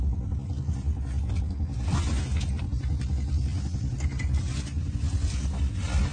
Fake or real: real